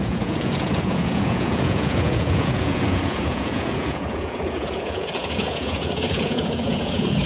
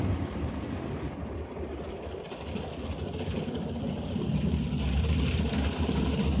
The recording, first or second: second